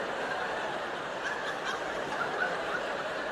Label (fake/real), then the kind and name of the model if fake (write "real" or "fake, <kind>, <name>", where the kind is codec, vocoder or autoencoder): fake, vocoder, BigVGAN v2